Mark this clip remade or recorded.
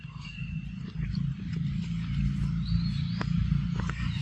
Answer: recorded